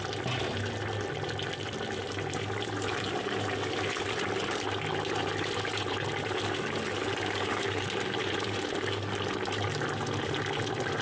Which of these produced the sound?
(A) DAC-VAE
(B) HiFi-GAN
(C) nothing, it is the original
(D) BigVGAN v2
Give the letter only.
C